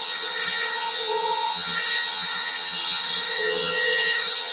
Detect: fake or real fake